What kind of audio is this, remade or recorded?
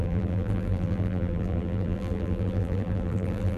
remade